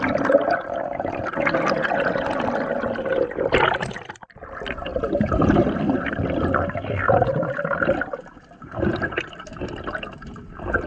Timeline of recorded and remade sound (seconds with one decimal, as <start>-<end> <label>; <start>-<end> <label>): 0.0-4.9 recorded; 4.9-9.4 remade; 9.4-10.9 recorded